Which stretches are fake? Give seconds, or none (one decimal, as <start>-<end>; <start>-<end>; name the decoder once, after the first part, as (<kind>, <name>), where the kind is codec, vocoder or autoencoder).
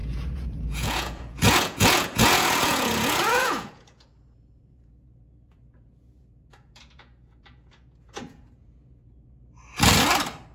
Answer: 0.0-9.0 (vocoder, Vocos)